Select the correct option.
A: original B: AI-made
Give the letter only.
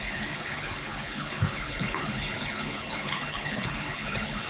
B